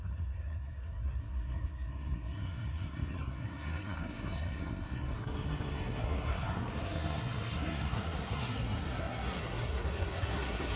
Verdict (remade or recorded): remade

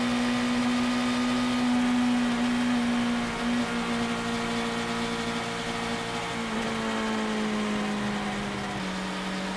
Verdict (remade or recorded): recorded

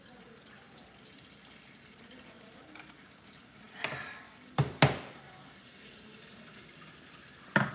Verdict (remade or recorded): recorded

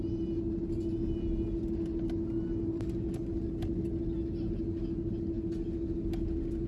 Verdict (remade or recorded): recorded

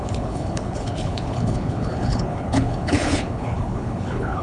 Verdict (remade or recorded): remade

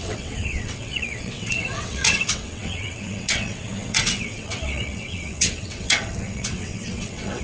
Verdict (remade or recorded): remade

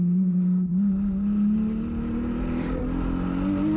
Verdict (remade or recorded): recorded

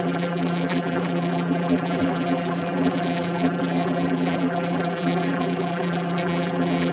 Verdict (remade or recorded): remade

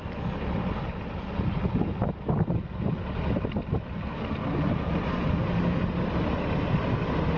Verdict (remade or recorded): recorded